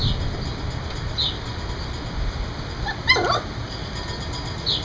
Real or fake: real